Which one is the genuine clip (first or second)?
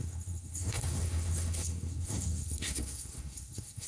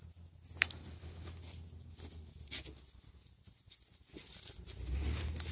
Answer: second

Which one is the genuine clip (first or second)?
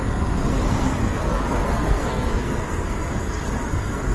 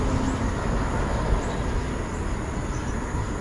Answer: second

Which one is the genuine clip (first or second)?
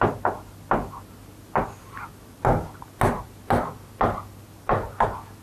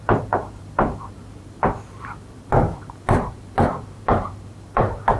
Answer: first